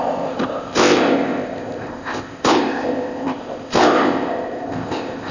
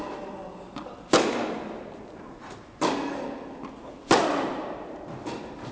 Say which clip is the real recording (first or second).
second